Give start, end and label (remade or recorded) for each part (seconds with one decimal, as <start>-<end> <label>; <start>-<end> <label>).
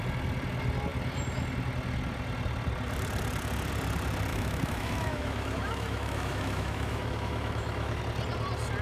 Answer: 0.0-4.3 recorded; 4.3-8.0 remade; 8.0-8.8 recorded